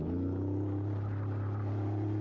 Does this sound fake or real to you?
real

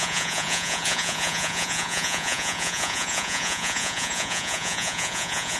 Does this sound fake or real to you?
fake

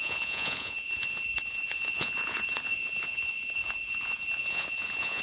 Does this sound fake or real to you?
fake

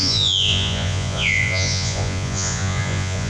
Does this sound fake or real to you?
fake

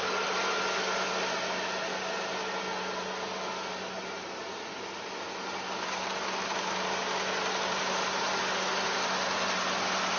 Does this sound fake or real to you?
real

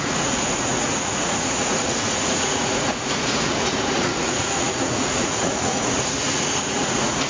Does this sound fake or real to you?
fake